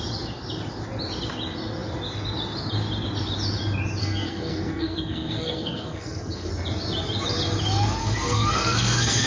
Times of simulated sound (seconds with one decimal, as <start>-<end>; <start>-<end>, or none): 4.0-6.5; 8.0-9.3